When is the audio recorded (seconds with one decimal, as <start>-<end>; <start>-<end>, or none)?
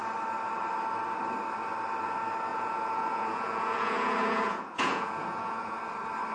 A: 0.0-2.5; 5.8-6.3